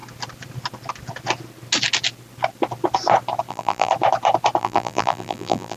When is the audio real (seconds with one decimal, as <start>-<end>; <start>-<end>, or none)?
0.0-3.5; 3.9-4.6